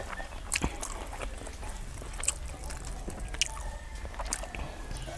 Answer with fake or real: real